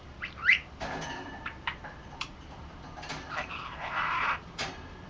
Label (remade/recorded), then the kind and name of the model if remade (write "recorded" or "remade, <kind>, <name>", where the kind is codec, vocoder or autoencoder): remade, vocoder, BigVGAN v2